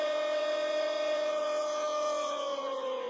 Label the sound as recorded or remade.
remade